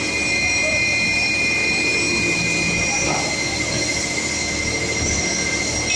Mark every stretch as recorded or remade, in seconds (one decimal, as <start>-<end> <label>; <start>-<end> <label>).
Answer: 0.0-6.0 recorded